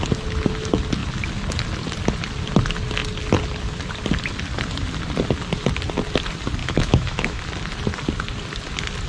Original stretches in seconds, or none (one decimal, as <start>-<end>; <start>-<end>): 0.0-6.6; 7.4-9.1